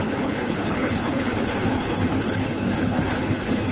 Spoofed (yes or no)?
yes